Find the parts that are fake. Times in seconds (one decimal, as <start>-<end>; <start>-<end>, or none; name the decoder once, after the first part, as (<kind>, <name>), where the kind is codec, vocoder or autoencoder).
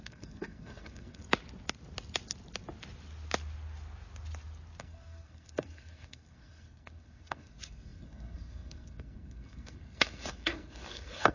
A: 0.0-1.2 (codec, SNAC); 4.8-11.3